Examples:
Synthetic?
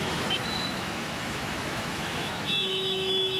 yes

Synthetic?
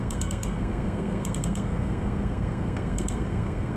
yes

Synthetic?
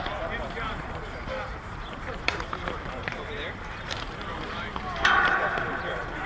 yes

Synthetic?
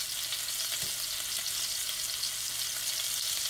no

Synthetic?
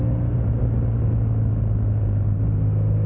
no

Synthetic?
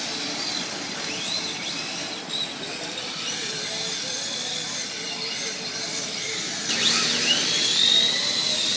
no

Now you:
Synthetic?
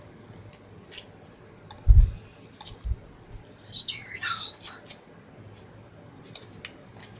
no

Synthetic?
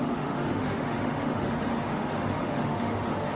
yes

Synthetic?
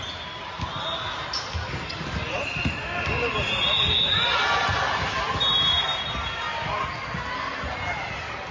no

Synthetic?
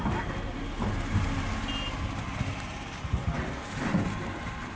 no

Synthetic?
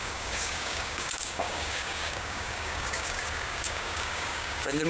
yes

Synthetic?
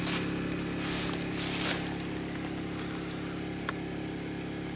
no